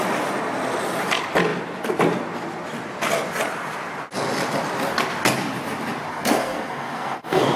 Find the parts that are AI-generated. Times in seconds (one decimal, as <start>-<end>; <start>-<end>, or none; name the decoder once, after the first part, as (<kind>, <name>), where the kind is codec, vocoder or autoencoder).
6.1-7.6 (codec, SNAC)